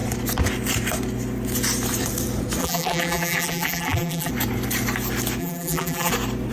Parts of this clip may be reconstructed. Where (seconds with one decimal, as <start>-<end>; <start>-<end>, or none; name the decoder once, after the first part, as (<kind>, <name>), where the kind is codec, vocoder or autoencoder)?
2.6-4.3 (vocoder, BigVGAN v2); 5.4-6.1